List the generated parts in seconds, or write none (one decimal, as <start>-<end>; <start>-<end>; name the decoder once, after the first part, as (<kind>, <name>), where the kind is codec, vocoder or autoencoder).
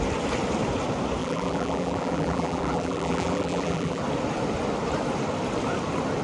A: 1.2-4.0 (vocoder, BigVGAN v2)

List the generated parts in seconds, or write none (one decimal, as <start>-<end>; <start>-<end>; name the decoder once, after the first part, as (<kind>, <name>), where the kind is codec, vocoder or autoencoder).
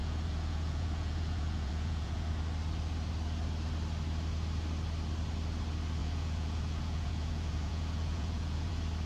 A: 0.0-2.3 (vocoder, Vocos); 6.0-8.7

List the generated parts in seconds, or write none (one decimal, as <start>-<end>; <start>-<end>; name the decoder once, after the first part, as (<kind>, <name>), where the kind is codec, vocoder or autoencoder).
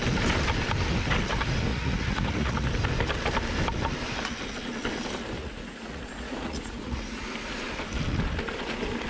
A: 1.7-2.7 (vocoder, Vocos); 5.4-7.2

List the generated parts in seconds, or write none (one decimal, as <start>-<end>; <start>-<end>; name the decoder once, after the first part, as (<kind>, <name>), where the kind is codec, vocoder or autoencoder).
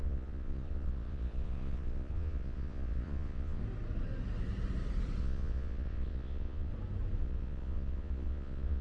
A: 0.0-3.6 (vocoder, Vocos); 5.2-6.7; 7.2-8.8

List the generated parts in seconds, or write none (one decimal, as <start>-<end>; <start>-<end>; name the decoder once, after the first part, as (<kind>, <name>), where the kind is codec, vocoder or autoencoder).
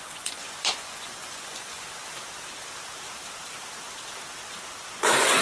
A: 0.0-2.0 (vocoder, Vocos); 4.9-5.4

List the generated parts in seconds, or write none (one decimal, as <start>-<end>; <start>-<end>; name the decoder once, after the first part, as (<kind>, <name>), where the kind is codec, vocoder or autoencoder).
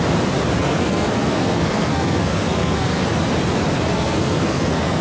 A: 0.6-3.0 (codec, SNAC); 3.9-5.0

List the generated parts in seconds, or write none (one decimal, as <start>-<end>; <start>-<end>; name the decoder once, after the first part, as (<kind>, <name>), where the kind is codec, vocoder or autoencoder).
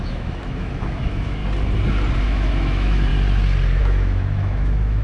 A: 0.0-1.4 (autoencoder, DAC-VAE); 2.2-3.1; 3.8-5.0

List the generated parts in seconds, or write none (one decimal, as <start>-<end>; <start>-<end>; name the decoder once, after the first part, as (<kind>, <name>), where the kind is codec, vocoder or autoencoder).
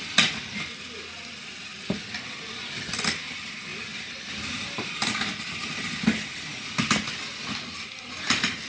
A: none